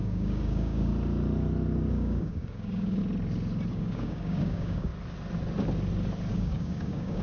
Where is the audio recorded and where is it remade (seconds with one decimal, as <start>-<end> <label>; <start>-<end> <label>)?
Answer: 0.0-0.9 remade; 0.9-1.9 recorded; 1.9-3.0 remade; 3.0-3.7 recorded; 3.7-4.9 remade; 4.9-6.3 recorded; 6.3-7.2 remade